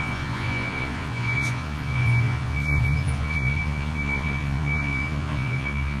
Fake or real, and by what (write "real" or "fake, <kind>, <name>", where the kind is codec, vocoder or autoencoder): fake, vocoder, Vocos